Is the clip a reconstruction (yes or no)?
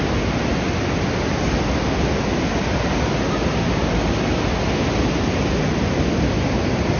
no